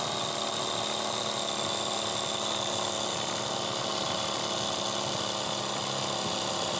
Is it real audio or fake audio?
real